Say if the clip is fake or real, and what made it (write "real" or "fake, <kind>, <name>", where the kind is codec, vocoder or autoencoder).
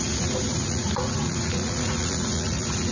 fake, vocoder, Vocos